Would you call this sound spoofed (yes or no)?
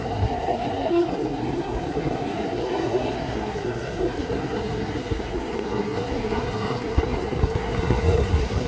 yes